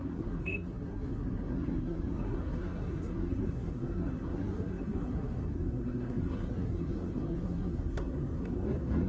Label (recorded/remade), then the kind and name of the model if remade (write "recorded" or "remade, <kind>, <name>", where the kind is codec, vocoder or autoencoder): remade, codec, SNAC